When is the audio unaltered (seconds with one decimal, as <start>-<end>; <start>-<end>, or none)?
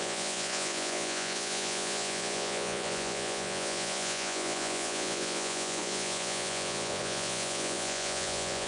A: none